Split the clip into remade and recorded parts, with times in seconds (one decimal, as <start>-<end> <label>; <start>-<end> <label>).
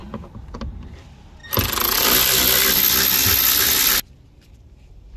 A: 0.0-0.6 recorded; 0.6-1.4 remade; 1.4-4.5 recorded; 4.5-5.2 remade